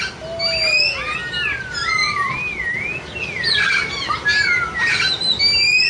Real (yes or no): yes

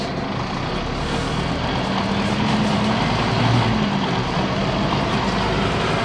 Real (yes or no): yes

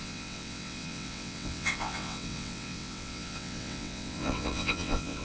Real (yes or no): no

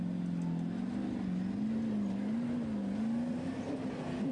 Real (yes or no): yes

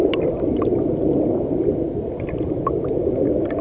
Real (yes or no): yes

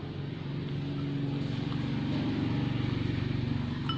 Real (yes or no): yes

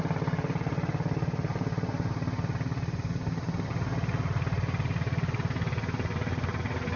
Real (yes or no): yes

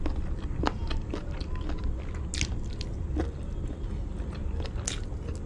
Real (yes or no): yes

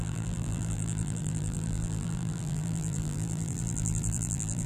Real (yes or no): no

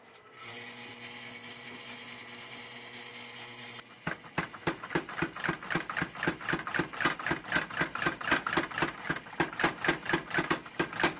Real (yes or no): yes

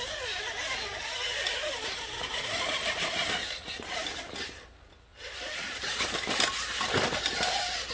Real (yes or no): yes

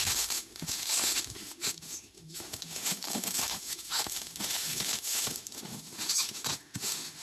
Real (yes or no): no